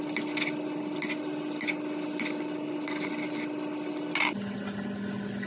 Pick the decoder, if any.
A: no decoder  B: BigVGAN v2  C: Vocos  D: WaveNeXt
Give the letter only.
A